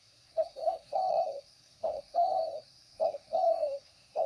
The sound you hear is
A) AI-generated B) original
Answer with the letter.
A